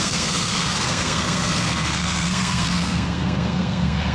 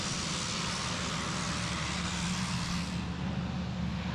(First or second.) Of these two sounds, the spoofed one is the first